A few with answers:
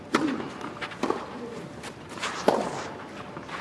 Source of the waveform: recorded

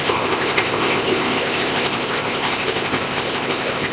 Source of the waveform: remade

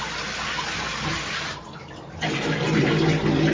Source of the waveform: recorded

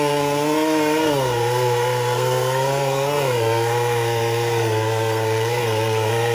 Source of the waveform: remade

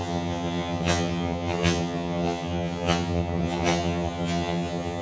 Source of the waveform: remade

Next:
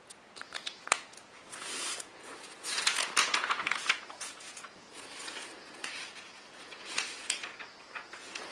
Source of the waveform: remade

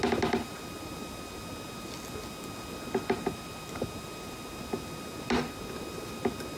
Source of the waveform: recorded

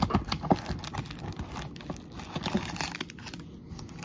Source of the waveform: recorded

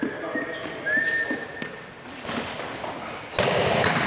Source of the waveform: recorded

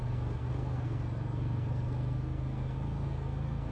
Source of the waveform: remade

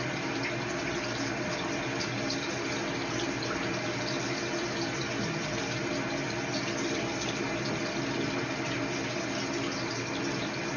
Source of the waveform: recorded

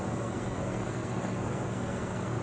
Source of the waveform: remade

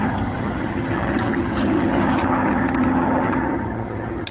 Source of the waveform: remade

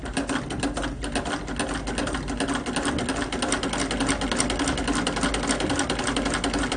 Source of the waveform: recorded